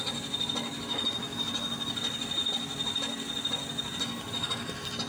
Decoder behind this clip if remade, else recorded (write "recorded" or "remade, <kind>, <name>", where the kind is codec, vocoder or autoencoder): recorded